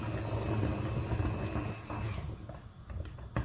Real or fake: real